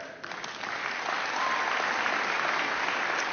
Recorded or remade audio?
recorded